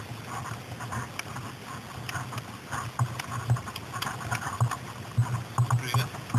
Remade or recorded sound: recorded